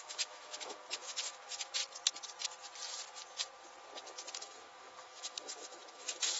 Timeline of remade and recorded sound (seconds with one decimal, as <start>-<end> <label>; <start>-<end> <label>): 0.0-1.8 remade; 1.8-4.3 recorded; 4.3-6.4 remade